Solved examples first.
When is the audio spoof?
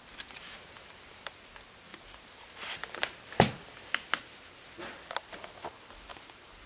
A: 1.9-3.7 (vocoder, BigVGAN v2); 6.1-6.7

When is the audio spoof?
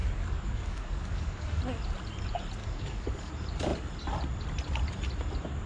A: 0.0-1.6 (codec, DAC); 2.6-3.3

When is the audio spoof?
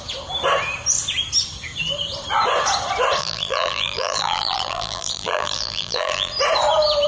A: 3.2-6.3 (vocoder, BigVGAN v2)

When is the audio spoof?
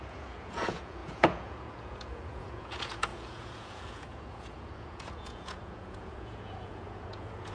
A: 0.0-7.5 (vocoder, Vocos)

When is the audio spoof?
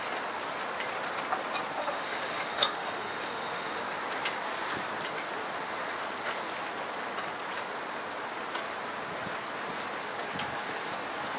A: 1.8-3.8 (autoencoder, DAC-VAE)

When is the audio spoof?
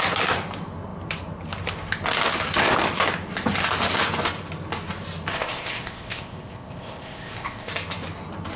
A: 5.3-7.7 (codec, ZipCodec)